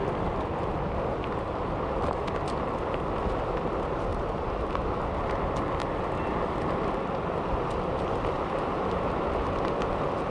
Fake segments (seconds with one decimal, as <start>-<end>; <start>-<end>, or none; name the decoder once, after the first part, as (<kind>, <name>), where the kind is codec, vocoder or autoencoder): 4.1-4.8 (vocoder, BigVGAN v2); 5.8-9.2